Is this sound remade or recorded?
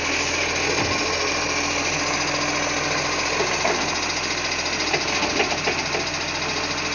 recorded